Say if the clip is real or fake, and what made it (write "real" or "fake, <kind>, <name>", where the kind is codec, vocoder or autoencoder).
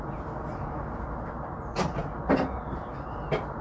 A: real